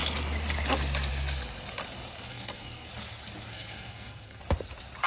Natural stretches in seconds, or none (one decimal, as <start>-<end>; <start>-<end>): 0.0-2.3; 2.9-3.5; 4.4-5.1